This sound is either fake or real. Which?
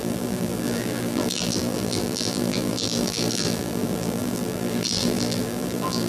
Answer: fake